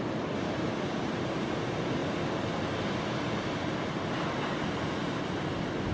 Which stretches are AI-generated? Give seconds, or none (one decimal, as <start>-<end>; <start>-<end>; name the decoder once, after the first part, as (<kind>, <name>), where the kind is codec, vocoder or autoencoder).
none